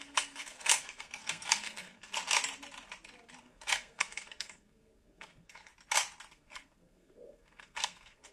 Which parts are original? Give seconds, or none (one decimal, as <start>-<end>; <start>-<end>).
2.1-3.4; 5.7-6.3